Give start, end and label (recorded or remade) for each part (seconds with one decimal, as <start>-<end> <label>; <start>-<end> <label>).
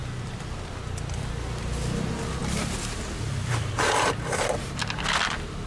0.0-1.2 remade; 1.2-5.7 recorded